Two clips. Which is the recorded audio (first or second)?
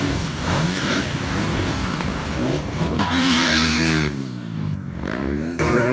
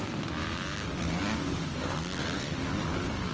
second